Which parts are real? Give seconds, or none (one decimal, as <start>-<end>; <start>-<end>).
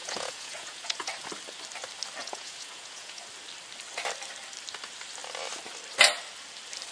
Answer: 1.1-2.2; 3.2-6.9